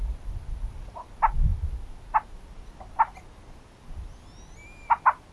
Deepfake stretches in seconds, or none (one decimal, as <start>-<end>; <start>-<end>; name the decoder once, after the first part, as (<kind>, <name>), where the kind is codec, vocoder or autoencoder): none